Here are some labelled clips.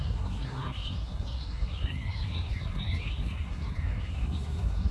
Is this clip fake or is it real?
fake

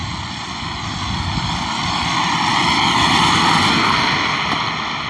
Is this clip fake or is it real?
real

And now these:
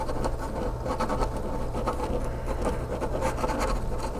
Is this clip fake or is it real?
real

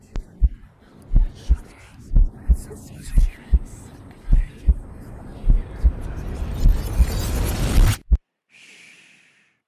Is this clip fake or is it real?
real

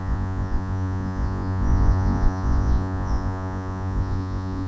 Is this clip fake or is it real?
fake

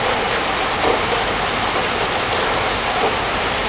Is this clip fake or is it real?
real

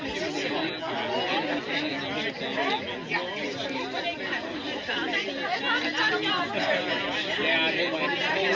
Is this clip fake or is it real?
real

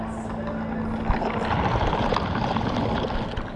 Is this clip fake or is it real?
real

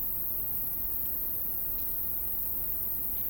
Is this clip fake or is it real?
real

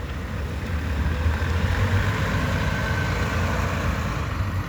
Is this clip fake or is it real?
real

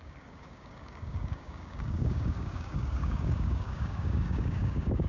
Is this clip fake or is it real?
fake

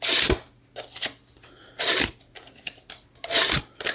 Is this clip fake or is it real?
real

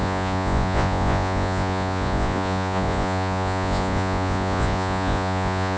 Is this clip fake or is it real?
fake